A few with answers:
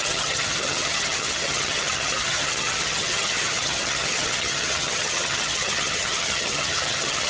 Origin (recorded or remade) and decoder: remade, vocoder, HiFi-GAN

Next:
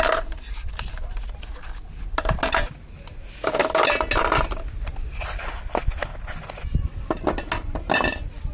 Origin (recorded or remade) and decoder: recorded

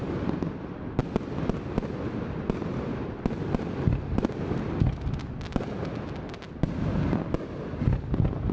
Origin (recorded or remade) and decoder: recorded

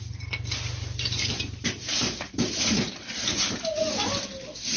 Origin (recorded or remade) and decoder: recorded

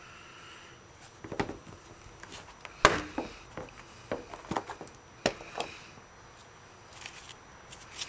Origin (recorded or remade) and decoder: recorded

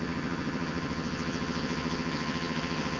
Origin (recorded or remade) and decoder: remade, vocoder, HiFi-GAN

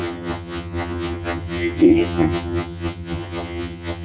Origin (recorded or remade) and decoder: remade, vocoder, HiFi-GAN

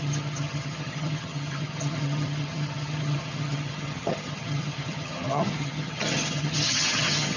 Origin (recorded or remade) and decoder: remade, vocoder, HiFi-GAN